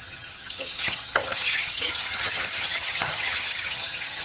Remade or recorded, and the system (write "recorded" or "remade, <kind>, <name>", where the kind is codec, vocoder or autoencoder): remade, vocoder, HiFi-GAN